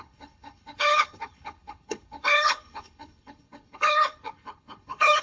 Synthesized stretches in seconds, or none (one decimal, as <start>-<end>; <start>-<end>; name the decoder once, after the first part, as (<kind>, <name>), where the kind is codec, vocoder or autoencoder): 0.0-5.2 (codec, HILCodec)